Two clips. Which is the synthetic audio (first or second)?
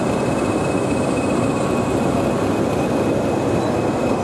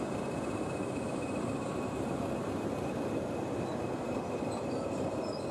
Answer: second